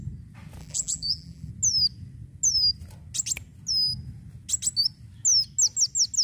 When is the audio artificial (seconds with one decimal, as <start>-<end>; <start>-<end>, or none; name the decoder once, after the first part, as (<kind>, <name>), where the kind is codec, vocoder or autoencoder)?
0.6-1.5 (vocoder, BigVGAN v2)